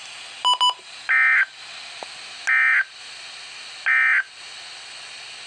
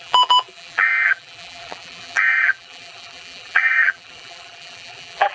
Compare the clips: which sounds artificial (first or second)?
second